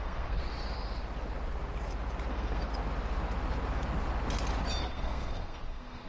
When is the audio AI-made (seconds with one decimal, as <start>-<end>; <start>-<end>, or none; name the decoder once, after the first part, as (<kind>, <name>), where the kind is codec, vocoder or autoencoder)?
0.0-0.4 (codec, SNAC); 2.3-2.7; 4.8-6.1